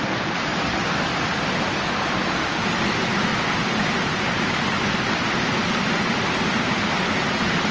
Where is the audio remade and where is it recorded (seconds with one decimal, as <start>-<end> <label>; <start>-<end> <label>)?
0.0-7.7 remade